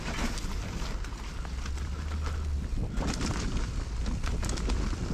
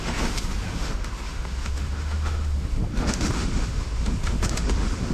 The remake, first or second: second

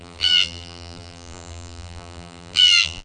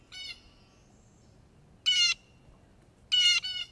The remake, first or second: first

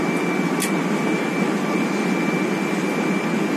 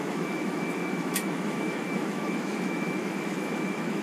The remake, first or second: second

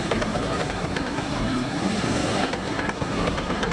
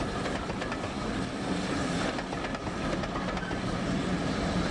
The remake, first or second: first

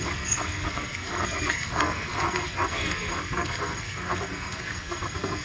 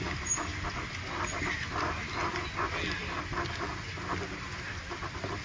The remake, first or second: first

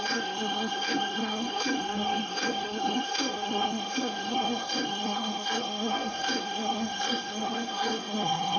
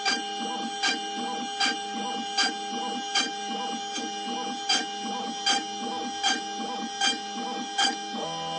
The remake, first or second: first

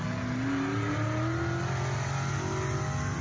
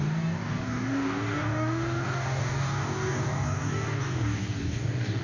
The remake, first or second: second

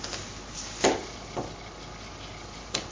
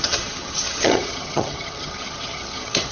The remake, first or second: second